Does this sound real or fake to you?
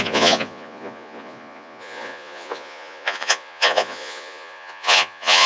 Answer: fake